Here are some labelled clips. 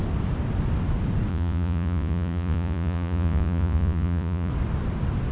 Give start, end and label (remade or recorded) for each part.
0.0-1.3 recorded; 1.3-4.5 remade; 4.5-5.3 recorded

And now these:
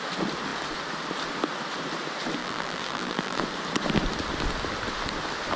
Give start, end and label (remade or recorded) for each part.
0.0-2.4 recorded; 2.4-3.4 remade; 3.4-5.6 recorded

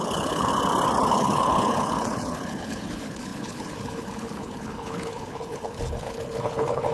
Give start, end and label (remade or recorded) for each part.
0.0-0.5 remade; 0.5-1.1 recorded; 1.1-6.9 remade

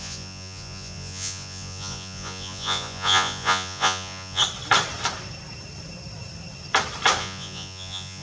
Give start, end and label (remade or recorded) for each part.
0.0-4.4 remade; 4.4-7.2 recorded; 7.2-8.2 remade

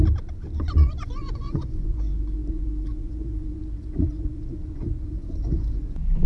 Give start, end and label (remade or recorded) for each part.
0.0-0.6 recorded; 0.6-6.3 remade

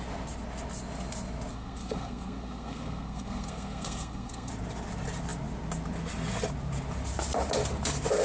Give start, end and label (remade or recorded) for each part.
0.0-1.5 recorded; 1.5-4.5 remade; 4.5-8.2 recorded

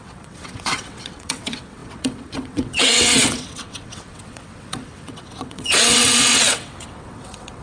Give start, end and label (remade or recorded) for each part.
0.0-7.6 remade